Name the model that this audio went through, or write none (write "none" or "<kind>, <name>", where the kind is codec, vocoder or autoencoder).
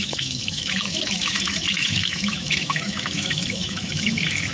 autoencoder, DAC-VAE